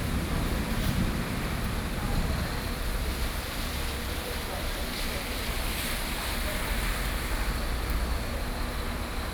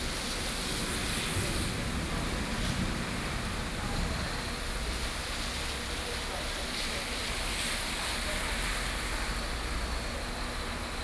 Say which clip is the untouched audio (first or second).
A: second